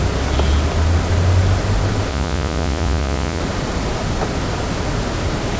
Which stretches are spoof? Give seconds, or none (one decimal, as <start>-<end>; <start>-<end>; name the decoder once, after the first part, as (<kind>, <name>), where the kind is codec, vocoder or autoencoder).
2.1-3.4 (vocoder, Vocos)